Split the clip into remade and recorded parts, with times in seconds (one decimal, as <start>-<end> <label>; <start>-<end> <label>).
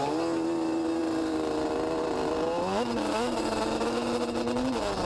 0.0-5.0 recorded